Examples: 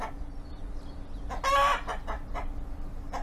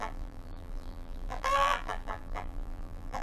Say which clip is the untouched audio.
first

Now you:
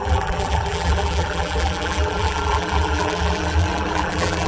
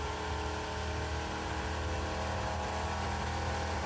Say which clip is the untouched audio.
second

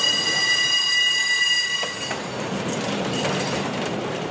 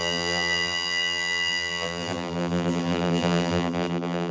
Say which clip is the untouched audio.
first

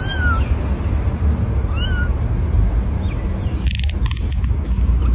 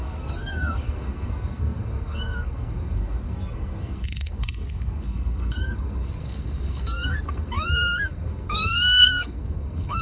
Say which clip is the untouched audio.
first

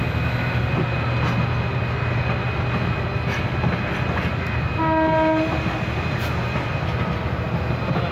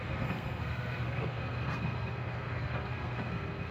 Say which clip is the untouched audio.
first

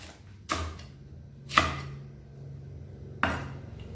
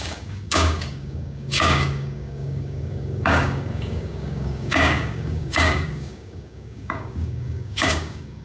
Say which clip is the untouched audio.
first